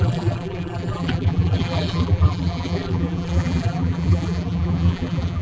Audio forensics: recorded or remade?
remade